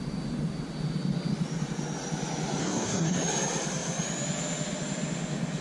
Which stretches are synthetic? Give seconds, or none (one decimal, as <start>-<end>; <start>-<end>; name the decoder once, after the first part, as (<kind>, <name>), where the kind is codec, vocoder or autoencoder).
2.6-3.2 (codec, SNAC)